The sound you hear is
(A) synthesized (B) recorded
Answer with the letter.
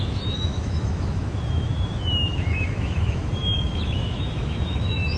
A